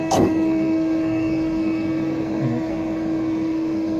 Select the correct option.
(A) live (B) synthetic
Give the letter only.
B